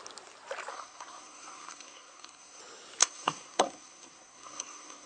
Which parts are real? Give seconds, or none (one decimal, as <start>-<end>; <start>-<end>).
0.0-0.7; 2.6-3.0